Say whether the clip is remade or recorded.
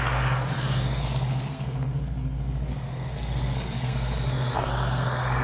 remade